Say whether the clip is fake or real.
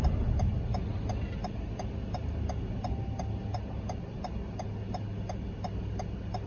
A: real